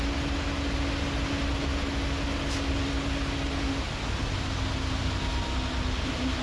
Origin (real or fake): real